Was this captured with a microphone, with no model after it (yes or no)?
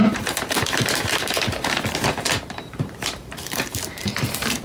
no